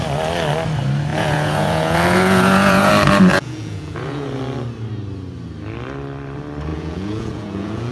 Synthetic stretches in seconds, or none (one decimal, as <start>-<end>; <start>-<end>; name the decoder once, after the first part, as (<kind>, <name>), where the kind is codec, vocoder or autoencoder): 1.1-2.9 (vocoder, Vocos); 3.3-4.4; 6.7-7.9